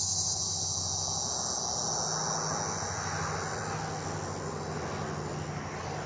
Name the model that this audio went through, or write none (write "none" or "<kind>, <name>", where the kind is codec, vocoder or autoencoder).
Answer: none